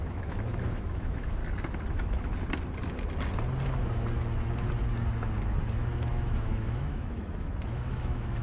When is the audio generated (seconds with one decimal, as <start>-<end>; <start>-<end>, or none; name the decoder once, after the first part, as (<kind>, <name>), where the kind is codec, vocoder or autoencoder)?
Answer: 0.0-1.4 (autoencoder, DAC-VAE); 1.9-2.3; 6.1-8.4